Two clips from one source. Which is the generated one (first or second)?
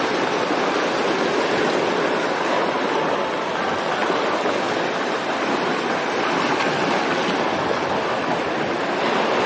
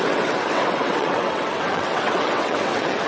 second